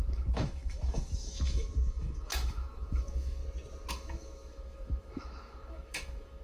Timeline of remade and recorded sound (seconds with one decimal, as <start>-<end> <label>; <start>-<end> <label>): 0.0-3.4 remade; 3.4-3.9 recorded; 3.9-6.4 remade